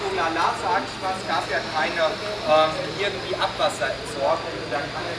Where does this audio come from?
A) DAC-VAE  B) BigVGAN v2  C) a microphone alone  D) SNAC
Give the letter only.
C